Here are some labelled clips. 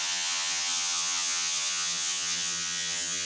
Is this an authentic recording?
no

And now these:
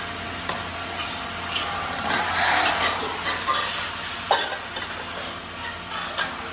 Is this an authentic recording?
yes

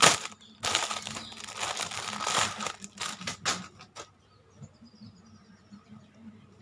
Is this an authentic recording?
yes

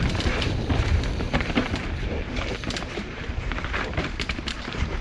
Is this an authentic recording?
no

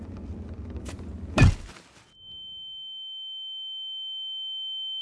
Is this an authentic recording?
yes